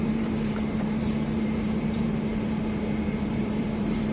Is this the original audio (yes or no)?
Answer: no